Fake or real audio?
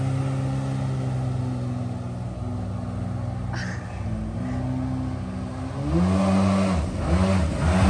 real